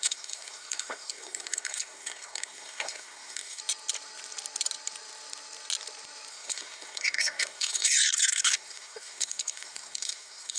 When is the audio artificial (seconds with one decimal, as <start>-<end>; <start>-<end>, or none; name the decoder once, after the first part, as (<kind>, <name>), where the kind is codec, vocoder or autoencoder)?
0.0-3.6 (codec, SNAC); 6.3-10.6